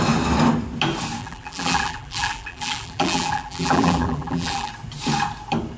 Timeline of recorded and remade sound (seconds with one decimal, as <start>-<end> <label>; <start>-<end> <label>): 0.0-1.2 recorded; 1.2-4.7 remade; 4.7-5.8 recorded